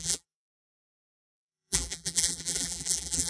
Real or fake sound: fake